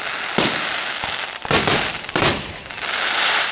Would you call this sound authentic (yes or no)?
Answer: yes